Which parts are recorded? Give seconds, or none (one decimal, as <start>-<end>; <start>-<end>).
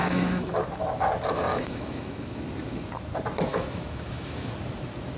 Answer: 0.6-1.5; 2.4-3.5; 4.5-5.2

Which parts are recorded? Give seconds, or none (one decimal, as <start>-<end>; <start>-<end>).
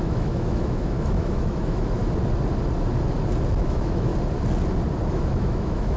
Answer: 2.0-3.6; 4.1-5.1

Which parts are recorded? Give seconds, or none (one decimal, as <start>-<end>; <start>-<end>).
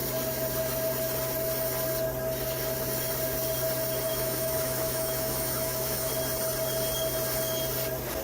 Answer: 0.0-4.1; 6.1-8.2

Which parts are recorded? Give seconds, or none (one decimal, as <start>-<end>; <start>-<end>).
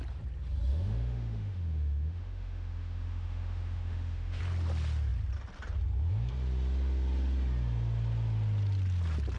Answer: 0.0-0.7; 4.4-9.4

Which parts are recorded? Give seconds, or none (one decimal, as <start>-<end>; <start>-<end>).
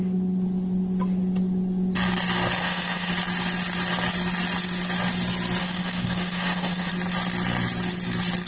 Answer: 0.0-2.6; 3.1-5.6; 6.9-8.5